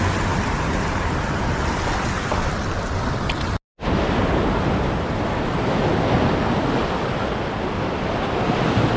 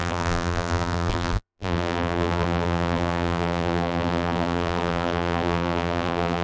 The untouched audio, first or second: first